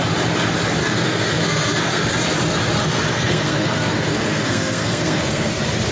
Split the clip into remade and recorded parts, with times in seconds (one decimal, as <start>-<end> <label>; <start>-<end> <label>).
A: 0.0-0.8 recorded; 0.8-2.1 remade; 2.1-3.1 recorded; 3.1-5.5 remade; 5.5-5.9 recorded